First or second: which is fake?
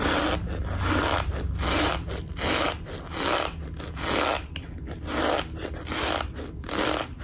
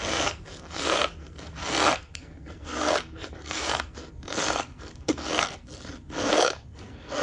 second